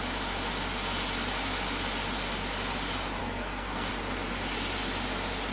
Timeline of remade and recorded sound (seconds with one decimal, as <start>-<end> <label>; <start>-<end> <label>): 0.0-3.2 recorded; 3.2-3.9 remade; 3.9-5.5 recorded